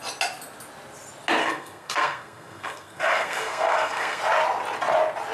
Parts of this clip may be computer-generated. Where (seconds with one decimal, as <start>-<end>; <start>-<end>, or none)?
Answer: 1.4-4.2